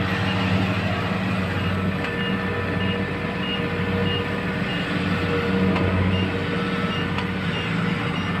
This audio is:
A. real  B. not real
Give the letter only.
A